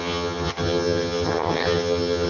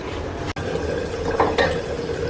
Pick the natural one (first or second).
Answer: second